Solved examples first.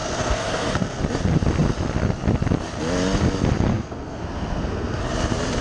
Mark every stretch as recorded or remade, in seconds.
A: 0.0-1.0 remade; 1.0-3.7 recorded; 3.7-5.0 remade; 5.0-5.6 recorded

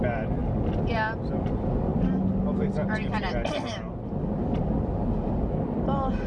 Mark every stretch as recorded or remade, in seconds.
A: 0.0-6.3 recorded

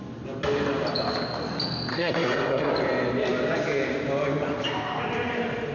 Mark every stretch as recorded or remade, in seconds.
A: 0.0-1.9 recorded; 1.9-2.7 remade; 2.7-5.7 recorded

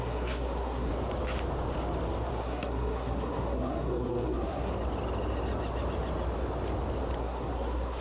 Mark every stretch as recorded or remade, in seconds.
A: 0.0-0.9 remade; 0.9-2.3 recorded; 2.3-4.7 remade; 4.7-7.2 recorded; 7.2-8.0 remade

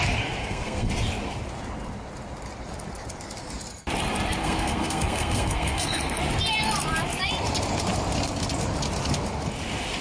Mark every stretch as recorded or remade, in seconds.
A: 0.0-0.4 recorded; 0.4-0.9 remade; 0.9-4.4 recorded; 4.4-6.2 remade; 6.2-10.0 recorded

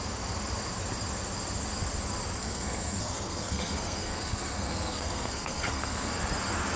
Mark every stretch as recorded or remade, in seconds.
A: 0.0-2.4 recorded; 2.4-6.1 remade; 6.1-6.8 recorded